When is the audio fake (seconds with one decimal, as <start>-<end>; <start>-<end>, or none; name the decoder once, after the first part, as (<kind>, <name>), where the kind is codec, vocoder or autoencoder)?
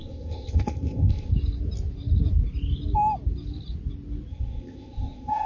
0.0-1.3 (codec, ZipCodec); 4.3-5.5